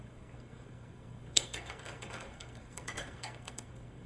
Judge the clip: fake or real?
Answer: fake